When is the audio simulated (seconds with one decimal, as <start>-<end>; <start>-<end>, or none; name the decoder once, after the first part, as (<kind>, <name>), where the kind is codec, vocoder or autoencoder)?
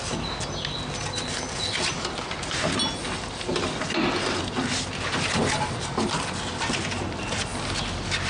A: none